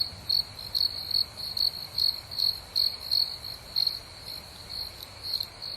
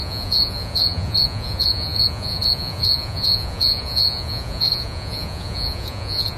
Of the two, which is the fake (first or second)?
second